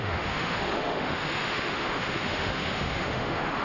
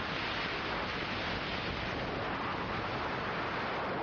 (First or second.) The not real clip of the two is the first